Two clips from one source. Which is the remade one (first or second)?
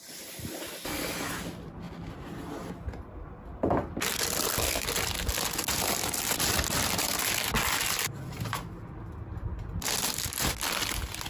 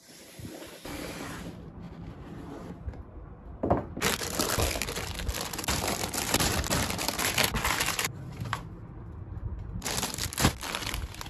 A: second